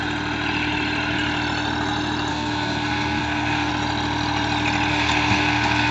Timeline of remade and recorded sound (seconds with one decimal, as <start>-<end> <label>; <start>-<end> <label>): 0.0-2.3 recorded; 2.3-3.7 remade; 3.7-4.9 recorded; 4.9-5.9 remade